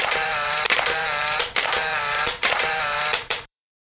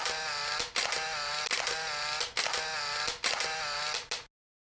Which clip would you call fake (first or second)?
first